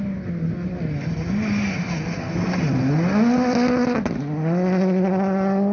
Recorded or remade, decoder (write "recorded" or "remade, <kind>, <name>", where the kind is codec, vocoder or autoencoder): recorded